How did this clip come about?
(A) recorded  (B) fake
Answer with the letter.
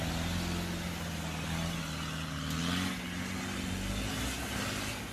A